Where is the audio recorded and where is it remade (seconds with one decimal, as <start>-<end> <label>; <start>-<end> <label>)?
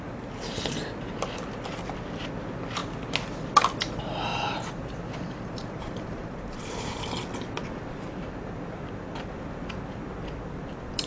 0.0-4.3 recorded; 4.3-7.1 remade; 7.1-11.1 recorded